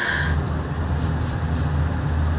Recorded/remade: recorded